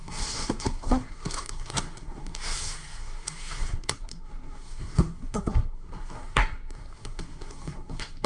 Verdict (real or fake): fake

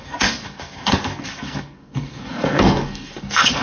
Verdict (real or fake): fake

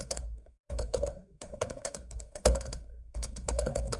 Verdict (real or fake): fake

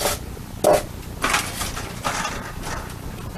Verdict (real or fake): real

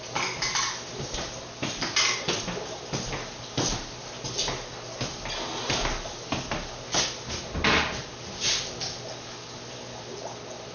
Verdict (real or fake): real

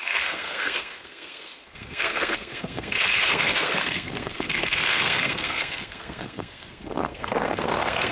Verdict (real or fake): fake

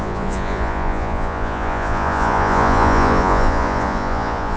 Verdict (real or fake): fake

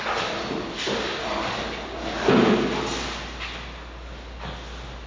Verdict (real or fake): real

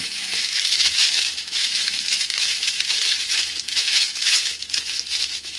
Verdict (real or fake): fake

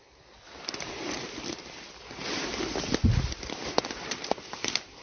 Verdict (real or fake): fake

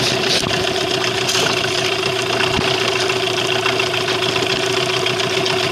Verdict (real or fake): real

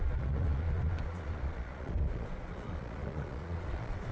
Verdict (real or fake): fake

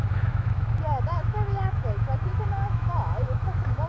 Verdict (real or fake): fake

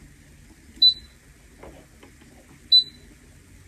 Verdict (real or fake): real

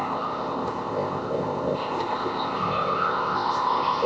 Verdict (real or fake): fake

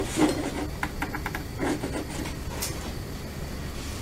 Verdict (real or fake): real